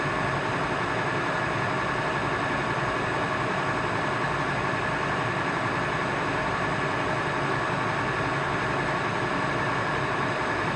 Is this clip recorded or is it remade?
recorded